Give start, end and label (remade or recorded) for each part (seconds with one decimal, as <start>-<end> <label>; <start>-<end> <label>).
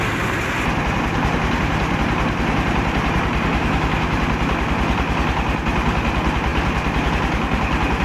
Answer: 0.0-3.5 recorded; 3.5-4.2 remade; 4.2-8.0 recorded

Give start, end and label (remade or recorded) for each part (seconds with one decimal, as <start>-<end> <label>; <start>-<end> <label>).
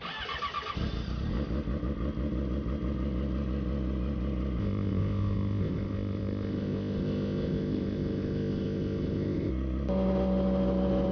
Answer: 0.0-4.6 recorded; 4.6-9.5 remade; 9.5-11.1 recorded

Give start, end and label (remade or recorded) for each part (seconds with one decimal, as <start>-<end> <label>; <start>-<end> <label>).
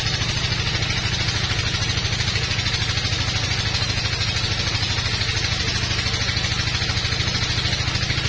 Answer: 0.0-8.3 recorded